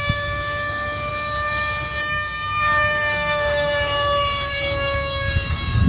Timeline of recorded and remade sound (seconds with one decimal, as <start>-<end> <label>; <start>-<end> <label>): 0.0-1.1 remade; 1.1-2.0 recorded; 2.0-5.9 remade